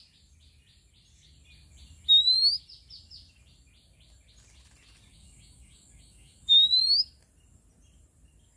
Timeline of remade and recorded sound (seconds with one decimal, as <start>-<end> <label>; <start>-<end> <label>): 0.0-5.1 recorded; 5.1-6.8 remade; 6.8-8.6 recorded